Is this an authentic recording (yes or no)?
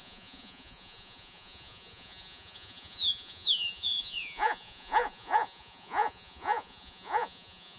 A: no